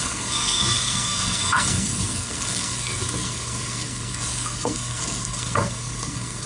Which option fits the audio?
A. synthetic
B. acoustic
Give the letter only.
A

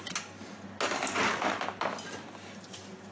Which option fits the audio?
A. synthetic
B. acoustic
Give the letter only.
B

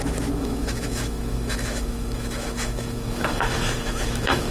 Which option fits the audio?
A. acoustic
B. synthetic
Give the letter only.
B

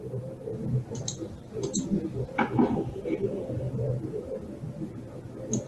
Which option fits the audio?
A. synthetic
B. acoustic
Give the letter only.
B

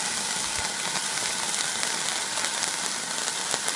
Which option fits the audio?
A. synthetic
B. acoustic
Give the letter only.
B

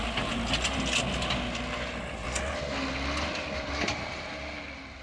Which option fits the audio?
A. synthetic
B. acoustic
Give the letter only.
B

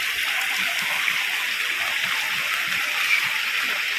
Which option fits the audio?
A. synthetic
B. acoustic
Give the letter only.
B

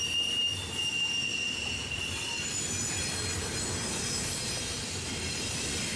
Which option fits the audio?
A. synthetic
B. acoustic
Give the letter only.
A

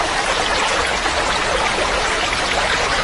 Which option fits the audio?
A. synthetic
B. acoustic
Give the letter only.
A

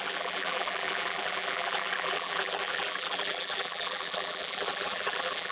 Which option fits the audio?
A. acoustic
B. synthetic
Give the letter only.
B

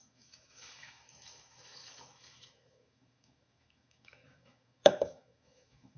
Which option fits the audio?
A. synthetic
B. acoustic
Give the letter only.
A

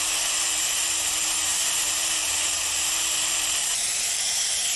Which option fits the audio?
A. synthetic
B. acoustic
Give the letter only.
A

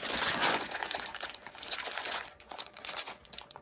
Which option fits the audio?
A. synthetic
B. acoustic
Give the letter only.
A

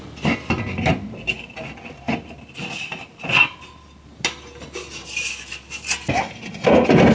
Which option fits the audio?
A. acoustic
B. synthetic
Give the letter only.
A